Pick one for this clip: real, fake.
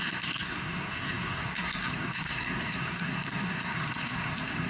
fake